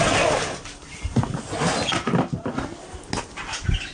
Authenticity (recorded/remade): recorded